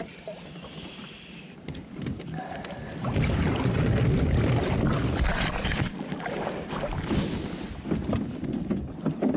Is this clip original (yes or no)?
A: yes